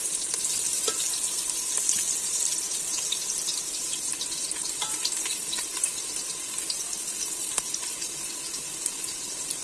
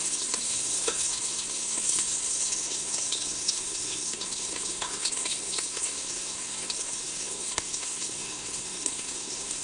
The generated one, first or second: second